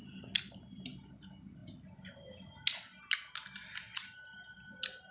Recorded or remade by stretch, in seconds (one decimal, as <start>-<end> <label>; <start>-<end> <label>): 0.0-5.1 recorded